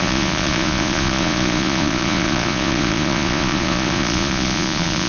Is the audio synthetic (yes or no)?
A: yes